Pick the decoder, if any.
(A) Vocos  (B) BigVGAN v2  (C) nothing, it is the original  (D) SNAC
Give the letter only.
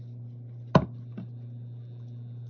C